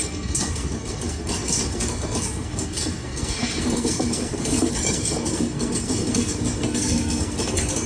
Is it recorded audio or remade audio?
remade